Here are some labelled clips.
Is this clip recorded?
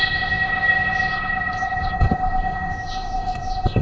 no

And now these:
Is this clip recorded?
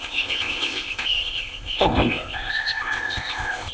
no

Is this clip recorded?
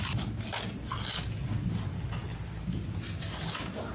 yes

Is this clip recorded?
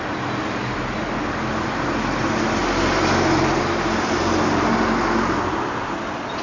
yes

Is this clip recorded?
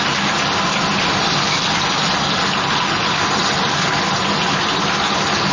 yes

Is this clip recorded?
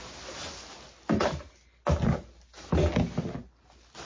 yes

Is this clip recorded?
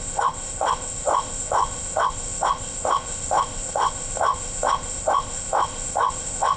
no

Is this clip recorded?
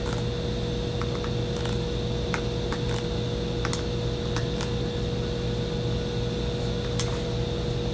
yes